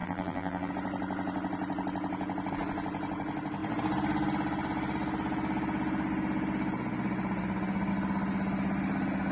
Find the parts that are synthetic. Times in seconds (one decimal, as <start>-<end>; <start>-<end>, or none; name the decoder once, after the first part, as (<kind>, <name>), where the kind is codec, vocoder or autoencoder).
0.0-0.7 (vocoder, BigVGAN v2)